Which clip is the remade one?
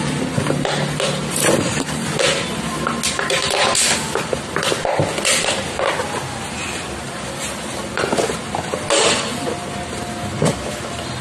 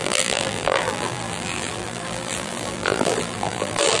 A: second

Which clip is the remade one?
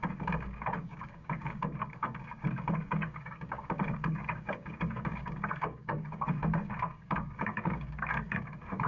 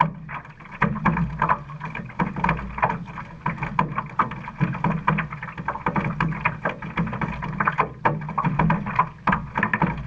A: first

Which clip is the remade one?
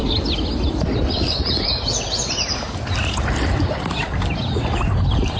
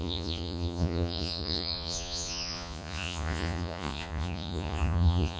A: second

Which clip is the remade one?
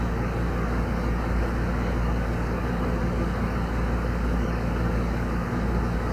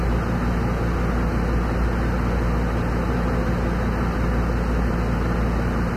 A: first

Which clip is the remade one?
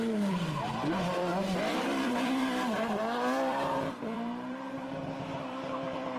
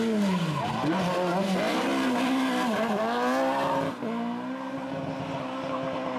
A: first